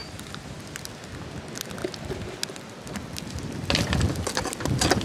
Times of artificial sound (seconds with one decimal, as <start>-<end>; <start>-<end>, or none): 0.0-0.6